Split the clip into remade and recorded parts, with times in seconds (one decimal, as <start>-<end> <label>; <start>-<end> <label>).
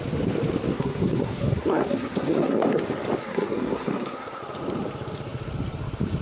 0.0-0.7 recorded; 0.7-2.8 remade; 2.8-3.2 recorded; 3.2-4.4 remade; 4.4-6.2 recorded